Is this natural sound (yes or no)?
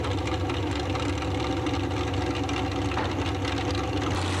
yes